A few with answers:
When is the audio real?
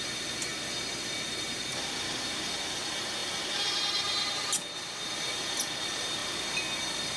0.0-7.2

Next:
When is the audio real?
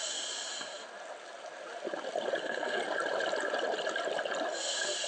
0.0-2.4; 2.8-5.1